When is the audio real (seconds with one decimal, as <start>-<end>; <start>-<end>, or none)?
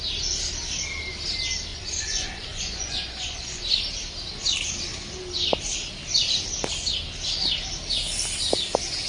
0.0-1.7; 3.6-9.1